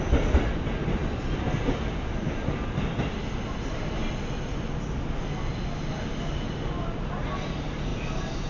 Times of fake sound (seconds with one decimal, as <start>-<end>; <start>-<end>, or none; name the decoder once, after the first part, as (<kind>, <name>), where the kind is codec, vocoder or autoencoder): none